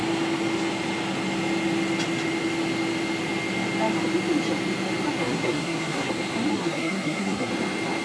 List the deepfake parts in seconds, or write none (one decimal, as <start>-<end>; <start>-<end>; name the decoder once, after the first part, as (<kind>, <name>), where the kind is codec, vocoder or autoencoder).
5.2-6.1 (codec, SNAC); 6.5-7.5